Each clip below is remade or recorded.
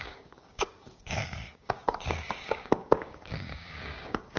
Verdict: remade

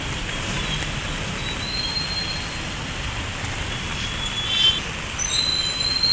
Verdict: recorded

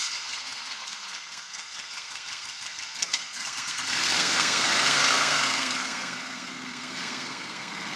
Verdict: remade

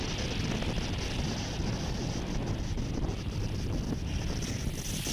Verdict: recorded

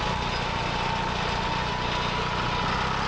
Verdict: recorded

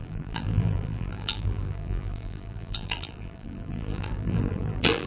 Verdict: remade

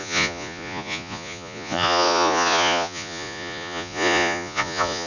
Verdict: remade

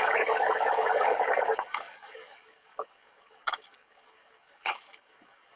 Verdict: remade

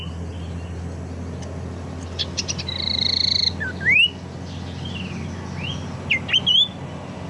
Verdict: recorded